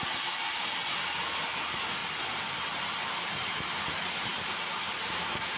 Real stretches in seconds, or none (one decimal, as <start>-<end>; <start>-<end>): 0.0-5.6